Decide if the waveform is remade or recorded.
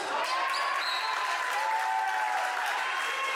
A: recorded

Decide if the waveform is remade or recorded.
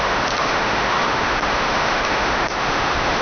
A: remade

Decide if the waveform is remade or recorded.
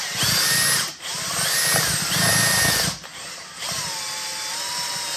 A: recorded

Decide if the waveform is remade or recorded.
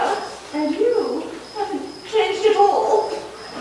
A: recorded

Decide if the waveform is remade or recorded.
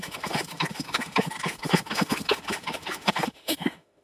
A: remade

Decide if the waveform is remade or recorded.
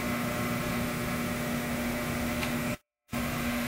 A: remade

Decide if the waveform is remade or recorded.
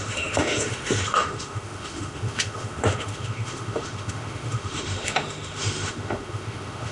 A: remade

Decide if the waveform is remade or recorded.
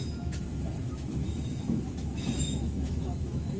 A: remade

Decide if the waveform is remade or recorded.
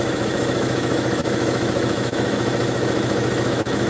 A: remade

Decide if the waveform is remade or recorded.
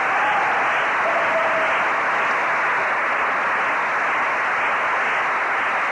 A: recorded